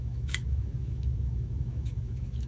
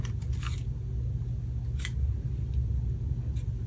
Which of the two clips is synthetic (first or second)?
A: first